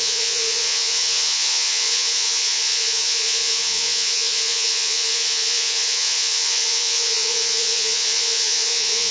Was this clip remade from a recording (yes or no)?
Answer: yes